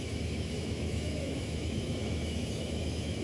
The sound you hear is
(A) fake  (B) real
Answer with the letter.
A